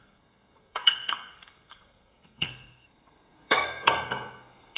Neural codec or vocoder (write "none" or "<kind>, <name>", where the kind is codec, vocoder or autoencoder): codec, SNAC